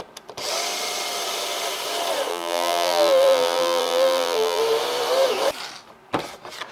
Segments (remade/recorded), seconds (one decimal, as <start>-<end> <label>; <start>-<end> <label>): 0.0-2.3 recorded; 2.3-4.6 remade; 4.6-6.7 recorded